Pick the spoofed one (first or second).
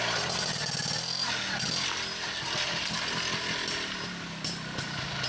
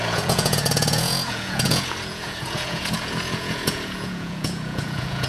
second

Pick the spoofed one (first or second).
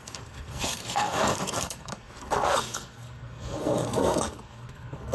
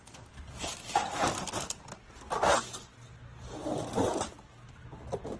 first